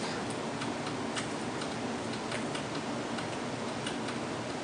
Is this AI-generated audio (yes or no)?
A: no